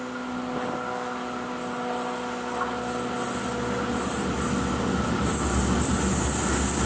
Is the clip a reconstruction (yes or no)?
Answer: no